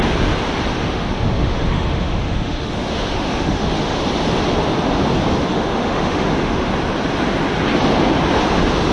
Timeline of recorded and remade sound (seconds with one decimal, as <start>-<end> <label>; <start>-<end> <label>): 0.0-0.8 recorded; 0.8-4.0 remade; 4.0-5.5 recorded; 5.5-6.7 remade; 6.7-8.9 recorded